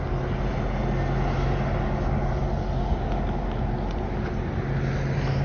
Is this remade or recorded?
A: recorded